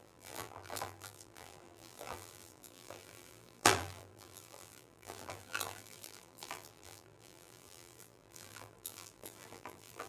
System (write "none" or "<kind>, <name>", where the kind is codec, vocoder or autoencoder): vocoder, BigVGAN v2